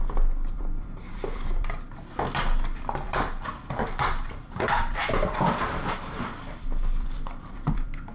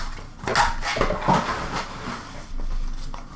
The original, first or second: second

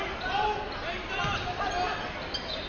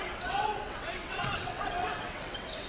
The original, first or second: first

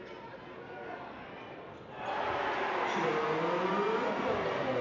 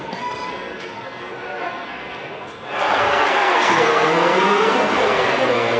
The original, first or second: first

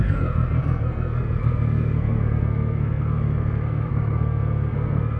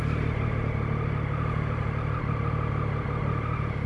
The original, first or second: second